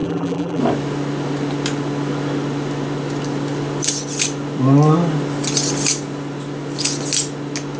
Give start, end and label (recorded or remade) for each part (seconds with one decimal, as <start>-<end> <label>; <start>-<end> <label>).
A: 0.0-0.6 remade; 0.6-7.8 recorded